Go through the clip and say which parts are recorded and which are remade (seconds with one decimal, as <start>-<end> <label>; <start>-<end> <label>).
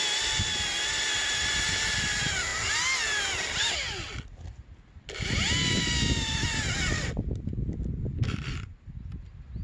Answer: 0.0-9.6 recorded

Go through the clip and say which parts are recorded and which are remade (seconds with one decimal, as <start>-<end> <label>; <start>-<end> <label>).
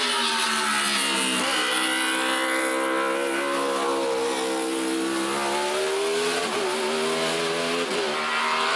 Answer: 0.0-8.8 recorded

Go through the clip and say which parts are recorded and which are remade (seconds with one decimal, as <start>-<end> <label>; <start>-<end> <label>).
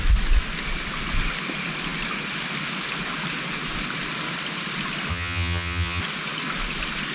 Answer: 0.0-5.1 recorded; 5.1-6.0 remade; 6.0-7.1 recorded